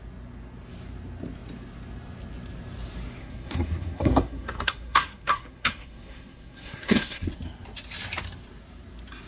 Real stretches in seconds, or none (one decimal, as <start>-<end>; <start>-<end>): 0.0-3.2; 7.3-9.3

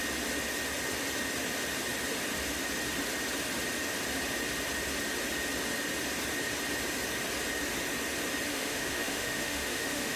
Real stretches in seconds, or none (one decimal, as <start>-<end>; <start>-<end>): 0.0-8.5

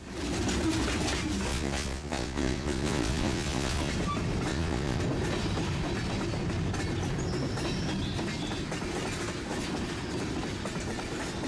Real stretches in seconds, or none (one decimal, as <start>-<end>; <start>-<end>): 0.0-1.5; 3.9-4.5; 5.0-11.5

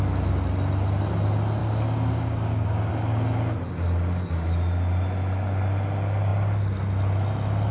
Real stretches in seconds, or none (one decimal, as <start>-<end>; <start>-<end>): 0.0-1.6; 2.9-7.7